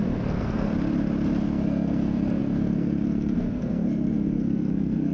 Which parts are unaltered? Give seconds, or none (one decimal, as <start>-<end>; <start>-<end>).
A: 0.7-1.4